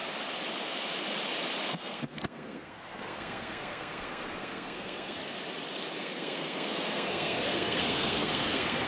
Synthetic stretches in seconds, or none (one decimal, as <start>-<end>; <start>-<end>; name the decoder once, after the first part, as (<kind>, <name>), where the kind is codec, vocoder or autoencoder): 1.7-5.2 (codec, SNAC); 6.0-8.9